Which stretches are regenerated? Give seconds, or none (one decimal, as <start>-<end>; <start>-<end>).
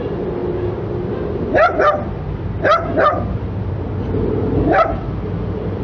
none